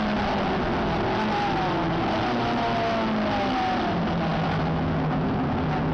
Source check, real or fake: real